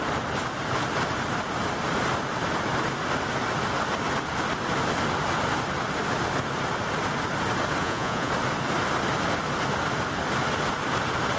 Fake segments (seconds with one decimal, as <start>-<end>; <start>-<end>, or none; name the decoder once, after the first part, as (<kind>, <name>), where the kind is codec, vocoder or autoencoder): 7.8-8.3 (vocoder, Vocos)

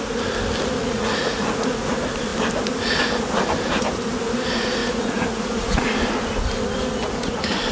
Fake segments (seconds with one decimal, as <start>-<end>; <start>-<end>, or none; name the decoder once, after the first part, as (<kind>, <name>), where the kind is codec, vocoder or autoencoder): 0.8-1.9 (vocoder, Vocos); 4.8-5.9